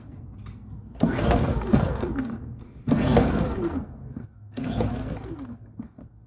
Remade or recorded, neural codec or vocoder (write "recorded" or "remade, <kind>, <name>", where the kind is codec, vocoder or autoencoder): remade, codec, SNAC